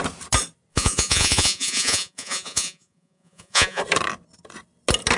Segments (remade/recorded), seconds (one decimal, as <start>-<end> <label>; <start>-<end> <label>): 0.0-0.7 recorded; 0.7-3.8 remade; 3.8-5.2 recorded